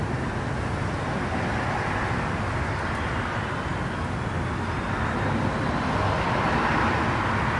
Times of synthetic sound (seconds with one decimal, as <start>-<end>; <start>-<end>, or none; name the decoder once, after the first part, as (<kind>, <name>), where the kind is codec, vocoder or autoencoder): none